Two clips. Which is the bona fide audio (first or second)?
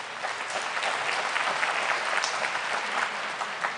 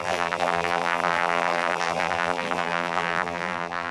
first